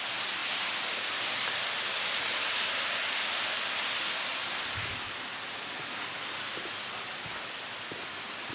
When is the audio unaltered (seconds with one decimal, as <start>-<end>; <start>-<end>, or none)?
0.0-8.5